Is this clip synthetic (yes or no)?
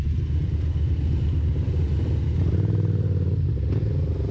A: yes